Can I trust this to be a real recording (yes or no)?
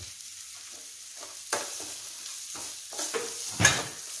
yes